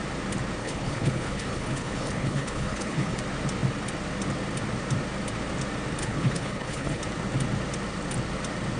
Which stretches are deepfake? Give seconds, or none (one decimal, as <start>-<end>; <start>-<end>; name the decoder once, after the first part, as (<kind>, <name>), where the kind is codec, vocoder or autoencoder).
0.6-3.2 (codec, HILCodec); 6.0-7.0